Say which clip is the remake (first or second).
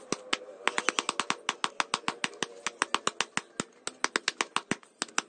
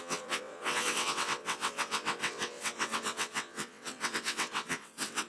second